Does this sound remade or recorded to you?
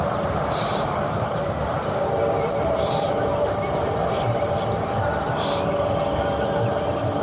remade